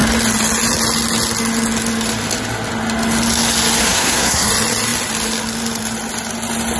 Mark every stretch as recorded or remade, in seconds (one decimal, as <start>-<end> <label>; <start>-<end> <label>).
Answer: 0.0-3.8 recorded; 3.8-4.5 remade; 4.5-6.8 recorded